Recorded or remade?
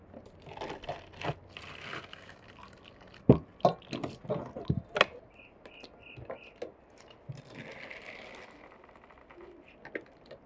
recorded